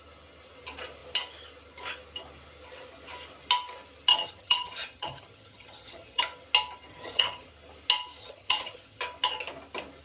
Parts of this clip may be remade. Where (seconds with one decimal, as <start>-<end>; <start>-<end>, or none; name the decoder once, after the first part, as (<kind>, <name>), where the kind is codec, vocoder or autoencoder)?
4.1-6.2 (vocoder, HiFi-GAN); 6.9-7.5; 8.2-9.0